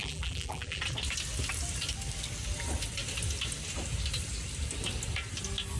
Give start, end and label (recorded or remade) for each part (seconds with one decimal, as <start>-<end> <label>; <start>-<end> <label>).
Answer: 0.0-0.8 remade; 0.8-5.8 recorded